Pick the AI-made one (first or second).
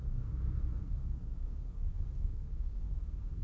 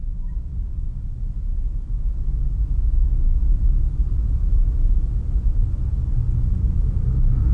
first